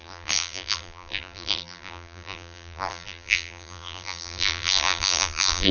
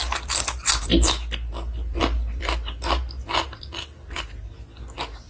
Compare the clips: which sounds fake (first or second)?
first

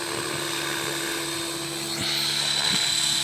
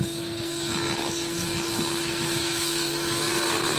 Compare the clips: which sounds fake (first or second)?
second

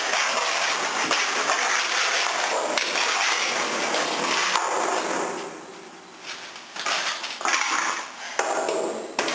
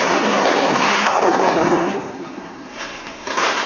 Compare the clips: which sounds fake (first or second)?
second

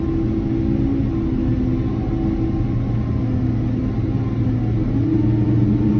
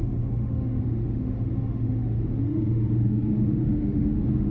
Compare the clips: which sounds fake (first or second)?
second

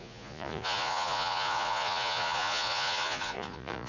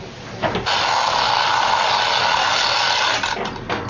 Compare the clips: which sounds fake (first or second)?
first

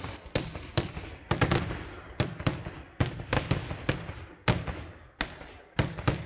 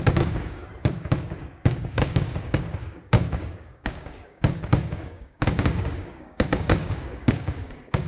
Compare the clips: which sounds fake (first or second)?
second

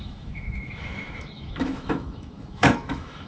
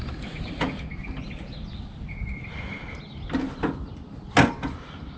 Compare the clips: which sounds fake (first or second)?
first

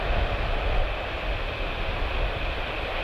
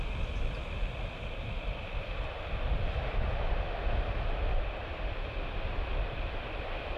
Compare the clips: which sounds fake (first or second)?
second